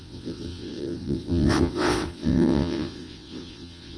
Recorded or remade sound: remade